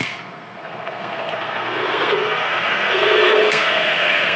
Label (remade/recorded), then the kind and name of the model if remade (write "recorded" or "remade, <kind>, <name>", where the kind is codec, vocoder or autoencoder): remade, codec, SNAC